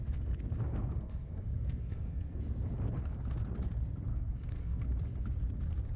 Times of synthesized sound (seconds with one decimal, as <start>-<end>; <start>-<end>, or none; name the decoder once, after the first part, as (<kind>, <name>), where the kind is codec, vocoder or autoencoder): 0.7-2.4 (codec, SNAC); 4.1-4.8